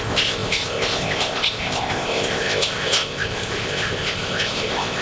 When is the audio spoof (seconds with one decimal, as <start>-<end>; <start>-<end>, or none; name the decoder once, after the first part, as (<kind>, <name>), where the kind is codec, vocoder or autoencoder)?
0.0-5.0 (codec, ZipCodec)